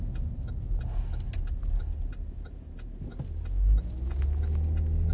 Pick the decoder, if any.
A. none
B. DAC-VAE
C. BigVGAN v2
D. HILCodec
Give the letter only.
A